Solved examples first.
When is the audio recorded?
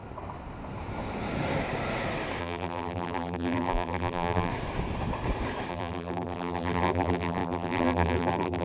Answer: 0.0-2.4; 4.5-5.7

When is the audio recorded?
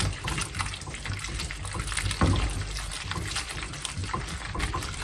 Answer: 0.4-2.9